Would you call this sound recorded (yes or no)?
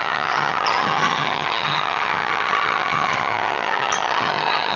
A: no